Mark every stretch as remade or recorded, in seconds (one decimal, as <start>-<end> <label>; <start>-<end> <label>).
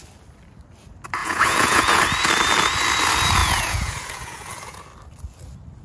0.0-1.2 recorded; 1.2-2.0 remade; 2.0-3.4 recorded; 3.4-4.8 remade; 4.8-5.8 recorded